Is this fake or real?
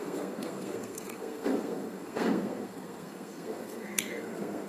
fake